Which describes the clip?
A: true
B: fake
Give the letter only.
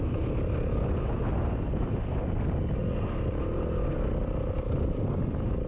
A